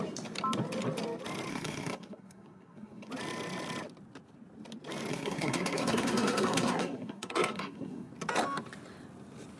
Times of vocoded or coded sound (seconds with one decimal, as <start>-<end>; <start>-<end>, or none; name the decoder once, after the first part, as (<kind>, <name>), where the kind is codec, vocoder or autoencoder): 1.5-3.1 (codec, SNAC); 5.1-8.1